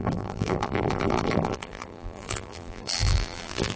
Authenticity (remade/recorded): remade